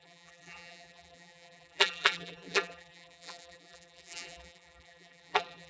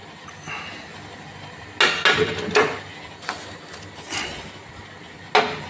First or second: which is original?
second